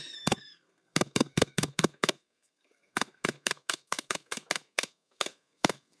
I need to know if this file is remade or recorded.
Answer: remade